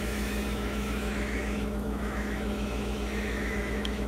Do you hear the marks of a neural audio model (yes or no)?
yes